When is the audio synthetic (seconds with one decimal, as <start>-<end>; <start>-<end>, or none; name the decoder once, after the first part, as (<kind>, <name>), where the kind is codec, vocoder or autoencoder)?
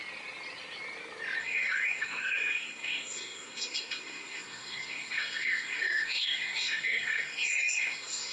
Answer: 1.4-8.3 (codec, SNAC)